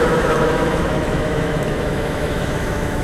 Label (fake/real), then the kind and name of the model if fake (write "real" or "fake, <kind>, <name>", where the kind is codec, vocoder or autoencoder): fake, autoencoder, DAC-VAE